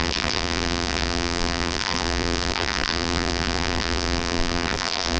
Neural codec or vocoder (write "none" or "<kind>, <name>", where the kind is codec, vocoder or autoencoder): vocoder, BigVGAN v2